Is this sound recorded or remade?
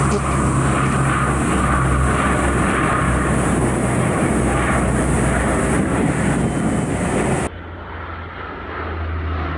recorded